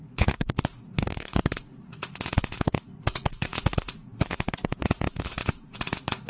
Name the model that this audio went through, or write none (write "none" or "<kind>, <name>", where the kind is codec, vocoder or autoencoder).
vocoder, Vocos